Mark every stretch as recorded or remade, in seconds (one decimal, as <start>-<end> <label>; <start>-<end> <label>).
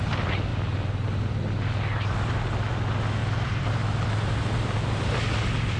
0.0-3.2 recorded; 3.2-5.1 remade; 5.1-5.8 recorded